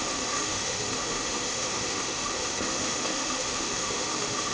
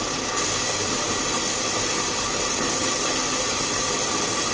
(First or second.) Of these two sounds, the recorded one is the second